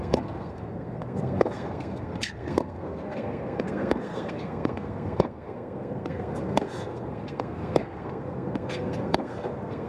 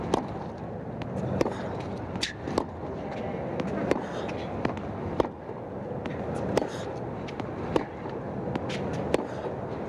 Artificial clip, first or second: first